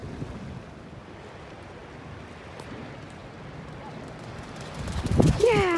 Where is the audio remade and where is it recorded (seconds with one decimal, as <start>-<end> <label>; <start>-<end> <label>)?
0.0-3.2 recorded; 3.2-4.1 remade; 4.1-5.8 recorded